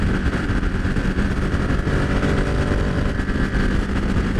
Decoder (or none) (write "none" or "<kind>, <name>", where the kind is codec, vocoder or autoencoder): vocoder, BigVGAN v2